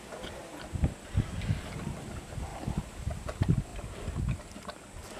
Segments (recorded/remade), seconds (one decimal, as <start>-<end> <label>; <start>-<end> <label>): 0.0-5.2 recorded